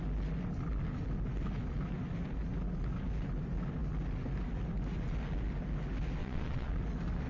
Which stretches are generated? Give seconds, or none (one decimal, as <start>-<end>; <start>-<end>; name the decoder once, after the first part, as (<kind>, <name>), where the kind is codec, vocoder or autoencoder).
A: 6.2-6.7 (vocoder, WaveNeXt)